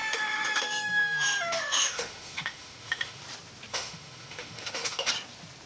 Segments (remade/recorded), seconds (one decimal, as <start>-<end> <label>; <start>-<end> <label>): 0.0-3.2 remade; 3.2-3.7 recorded; 3.7-5.1 remade; 5.1-5.7 recorded